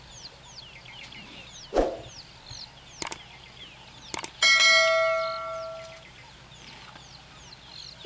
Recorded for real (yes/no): yes